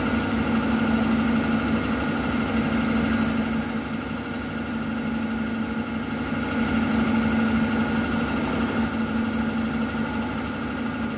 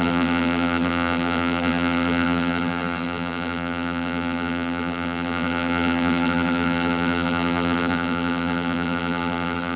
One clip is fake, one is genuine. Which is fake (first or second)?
second